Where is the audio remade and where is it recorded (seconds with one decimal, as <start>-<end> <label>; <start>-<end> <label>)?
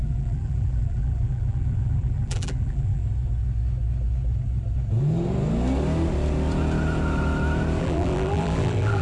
0.0-3.0 remade; 3.0-7.8 recorded; 7.8-9.0 remade